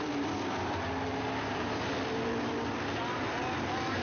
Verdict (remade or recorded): recorded